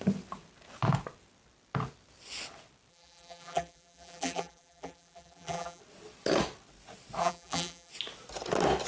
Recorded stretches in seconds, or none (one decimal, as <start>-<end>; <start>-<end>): 0.0-2.9; 5.8-7.2; 7.9-8.9